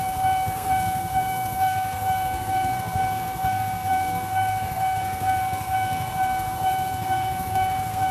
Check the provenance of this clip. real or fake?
fake